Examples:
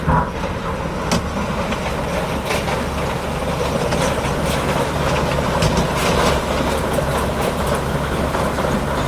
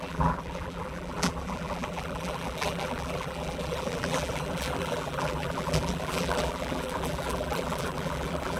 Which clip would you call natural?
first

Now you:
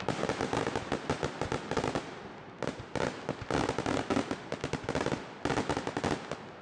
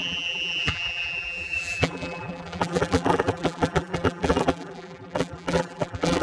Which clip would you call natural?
first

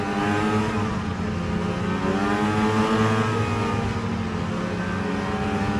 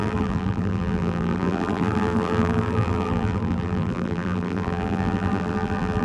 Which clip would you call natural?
first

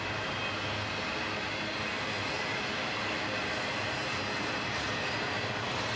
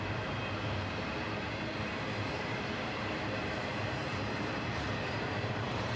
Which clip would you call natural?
first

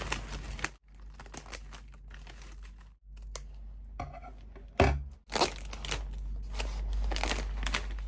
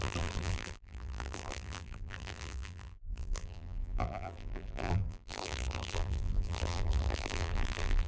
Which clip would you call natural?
first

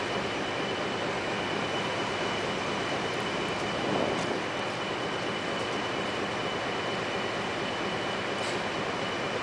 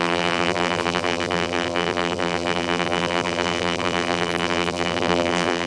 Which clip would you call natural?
first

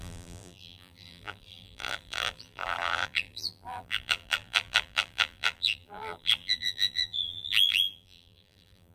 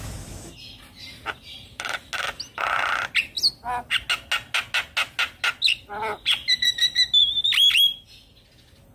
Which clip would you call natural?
second